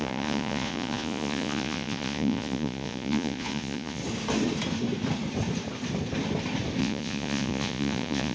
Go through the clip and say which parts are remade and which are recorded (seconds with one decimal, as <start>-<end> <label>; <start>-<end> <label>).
0.0-4.0 remade; 4.0-6.8 recorded; 6.8-8.3 remade